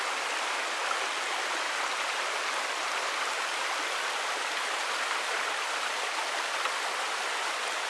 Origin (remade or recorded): recorded